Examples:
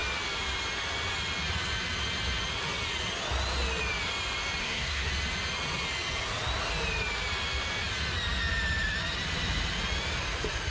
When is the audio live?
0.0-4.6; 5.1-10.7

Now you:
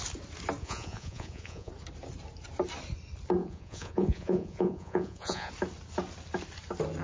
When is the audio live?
0.0-0.6; 1.7-3.4; 5.5-7.0

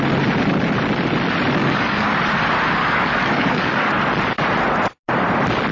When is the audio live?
0.0-1.6; 2.1-2.8; 4.0-5.7

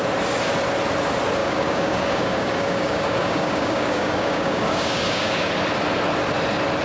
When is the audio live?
0.0-1.4; 5.5-6.8

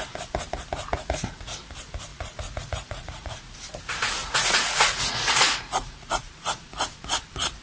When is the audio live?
0.0-0.9; 1.6-2.1; 3.5-4.2; 6.8-7.6

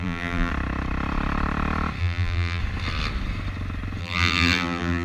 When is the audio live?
0.5-2.0; 2.6-4.0

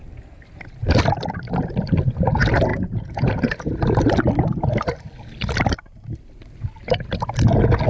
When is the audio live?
0.0-2.7; 3.4-7.9

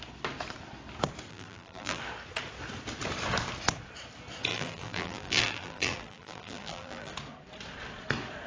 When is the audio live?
0.0-1.3; 2.0-4.5; 7.1-8.5